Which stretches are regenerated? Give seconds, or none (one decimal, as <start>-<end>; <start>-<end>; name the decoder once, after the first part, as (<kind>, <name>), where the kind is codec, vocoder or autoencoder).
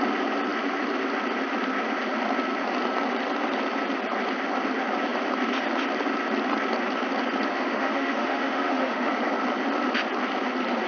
7.5-9.1 (autoencoder, DAC-VAE)